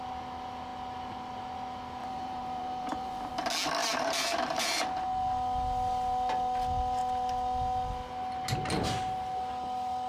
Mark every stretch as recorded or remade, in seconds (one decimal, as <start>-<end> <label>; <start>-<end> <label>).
0.0-2.0 recorded; 2.0-3.3 remade; 3.3-3.8 recorded; 3.8-4.8 remade; 4.8-10.1 recorded